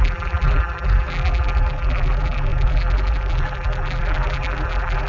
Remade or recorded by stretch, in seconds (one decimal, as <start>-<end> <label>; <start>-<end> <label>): 0.0-5.1 remade